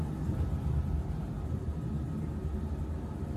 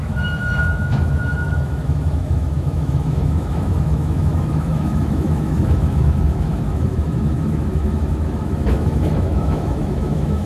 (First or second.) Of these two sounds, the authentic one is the first